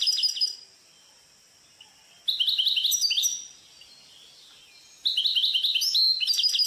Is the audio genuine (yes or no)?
yes